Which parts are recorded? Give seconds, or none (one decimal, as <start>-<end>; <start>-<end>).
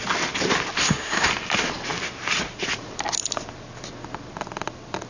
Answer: 0.0-0.8; 1.3-5.1